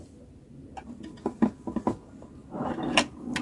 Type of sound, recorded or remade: recorded